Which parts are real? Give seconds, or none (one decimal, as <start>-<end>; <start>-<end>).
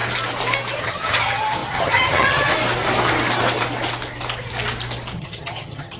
0.0-0.8; 2.5-5.2